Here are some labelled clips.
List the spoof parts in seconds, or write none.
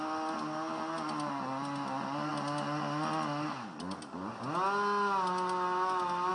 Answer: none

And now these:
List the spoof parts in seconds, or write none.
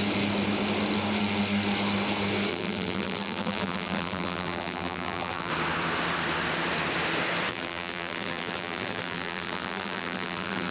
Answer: 2.5-5.5 (vocoder, BigVGAN v2); 7.5-10.7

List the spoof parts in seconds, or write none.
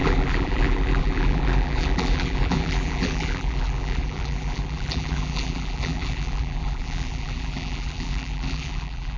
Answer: 0.0-9.2 (vocoder, BigVGAN v2)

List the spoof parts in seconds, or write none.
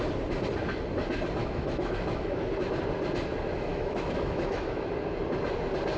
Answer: 1.4-2.5 (autoencoder, DAC-VAE); 3.7-4.9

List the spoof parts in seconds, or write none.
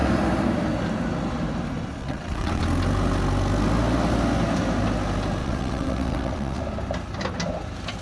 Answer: 2.0-2.6 (vocoder, WaveNeXt); 5.4-6.6